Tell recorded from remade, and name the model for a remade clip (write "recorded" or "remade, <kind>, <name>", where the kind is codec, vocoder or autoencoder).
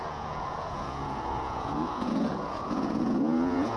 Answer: remade, vocoder, Vocos